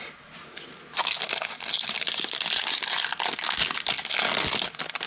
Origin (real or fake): real